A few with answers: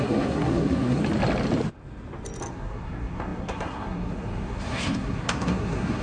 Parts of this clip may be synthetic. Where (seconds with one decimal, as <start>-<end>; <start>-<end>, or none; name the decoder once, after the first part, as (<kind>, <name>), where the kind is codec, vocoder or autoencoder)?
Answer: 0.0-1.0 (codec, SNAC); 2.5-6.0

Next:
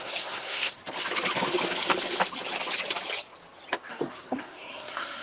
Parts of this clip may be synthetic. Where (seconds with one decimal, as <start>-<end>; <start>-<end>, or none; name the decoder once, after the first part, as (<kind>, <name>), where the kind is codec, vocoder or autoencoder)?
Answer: 0.0-0.8 (codec, SNAC); 3.9-5.2

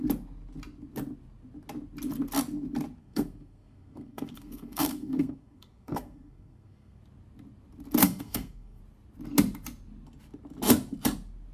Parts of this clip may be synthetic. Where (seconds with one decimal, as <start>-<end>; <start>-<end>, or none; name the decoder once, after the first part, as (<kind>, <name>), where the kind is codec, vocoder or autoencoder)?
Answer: 3.0-7.0 (codec, SNAC); 8.0-8.8